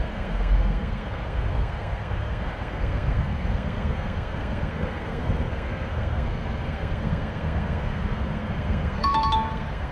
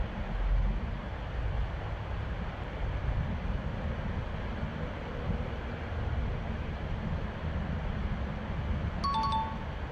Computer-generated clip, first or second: first